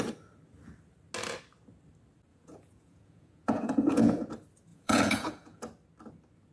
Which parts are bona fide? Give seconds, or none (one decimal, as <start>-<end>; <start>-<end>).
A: 0.0-2.3; 4.3-4.7; 5.6-6.5